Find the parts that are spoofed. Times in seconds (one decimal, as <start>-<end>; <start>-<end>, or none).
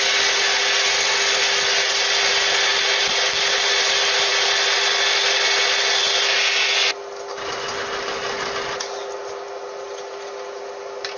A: none